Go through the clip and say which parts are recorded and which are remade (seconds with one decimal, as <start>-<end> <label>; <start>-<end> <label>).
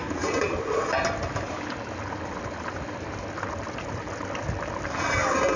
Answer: 0.0-5.6 recorded